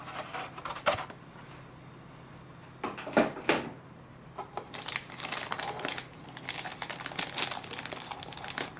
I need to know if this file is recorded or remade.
recorded